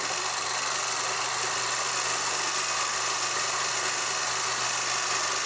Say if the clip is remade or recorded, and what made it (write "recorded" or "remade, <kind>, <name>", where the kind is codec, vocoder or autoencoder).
recorded